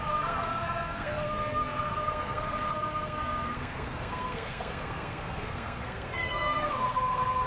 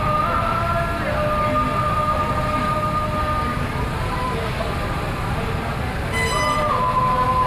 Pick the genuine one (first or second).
second